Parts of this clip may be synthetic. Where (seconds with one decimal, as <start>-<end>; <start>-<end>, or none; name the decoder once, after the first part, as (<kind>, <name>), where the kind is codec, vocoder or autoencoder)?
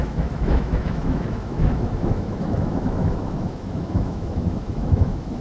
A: 0.0-5.4 (autoencoder, DAC-VAE)